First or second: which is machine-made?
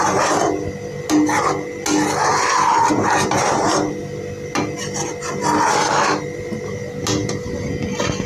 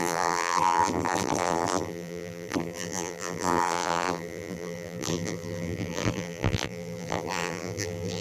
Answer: second